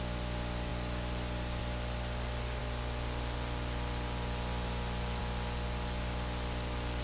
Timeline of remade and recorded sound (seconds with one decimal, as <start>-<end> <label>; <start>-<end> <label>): 0.0-7.0 recorded